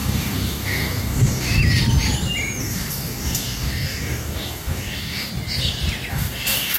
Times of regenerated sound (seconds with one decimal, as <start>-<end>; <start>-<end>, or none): 0.0-1.6; 2.6-5.3; 6.1-6.8